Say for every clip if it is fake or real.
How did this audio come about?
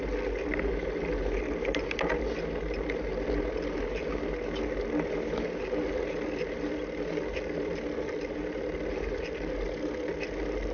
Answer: real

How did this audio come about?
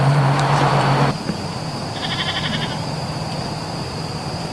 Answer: fake